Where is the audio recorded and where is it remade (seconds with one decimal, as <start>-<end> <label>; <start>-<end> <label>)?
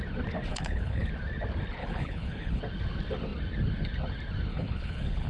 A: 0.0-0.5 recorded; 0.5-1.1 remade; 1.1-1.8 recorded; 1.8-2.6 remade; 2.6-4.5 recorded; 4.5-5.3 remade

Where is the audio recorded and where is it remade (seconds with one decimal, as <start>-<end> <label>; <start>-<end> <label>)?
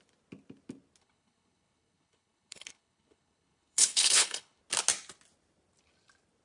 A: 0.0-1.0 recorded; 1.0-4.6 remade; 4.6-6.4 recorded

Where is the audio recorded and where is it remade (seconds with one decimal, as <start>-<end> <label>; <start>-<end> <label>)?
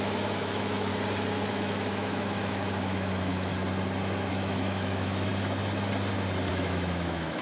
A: 0.0-0.9 remade; 0.9-1.5 recorded; 1.5-3.5 remade; 3.5-4.3 recorded; 4.3-5.3 remade; 5.3-6.5 recorded; 6.5-7.4 remade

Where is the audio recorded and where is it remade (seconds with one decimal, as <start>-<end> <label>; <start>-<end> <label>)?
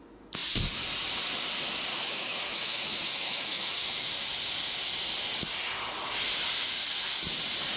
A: 0.0-1.9 recorded; 1.9-4.1 remade; 4.1-7.8 recorded